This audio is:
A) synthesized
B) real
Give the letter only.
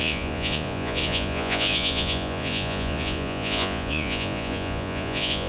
A